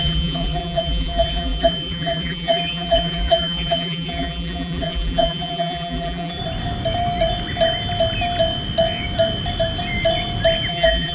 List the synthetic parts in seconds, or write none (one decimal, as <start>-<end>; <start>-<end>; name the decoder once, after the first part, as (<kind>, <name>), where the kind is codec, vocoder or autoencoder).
0.0-6.4 (vocoder, BigVGAN v2); 10.7-11.1